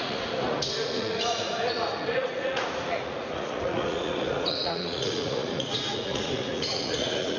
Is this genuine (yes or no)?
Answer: no